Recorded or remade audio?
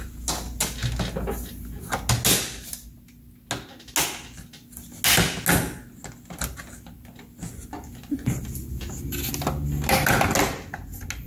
recorded